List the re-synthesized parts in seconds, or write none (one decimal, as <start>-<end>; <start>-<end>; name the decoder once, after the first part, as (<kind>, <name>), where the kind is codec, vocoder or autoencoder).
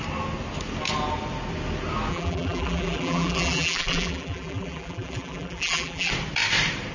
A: 2.1-6.1 (vocoder, BigVGAN v2)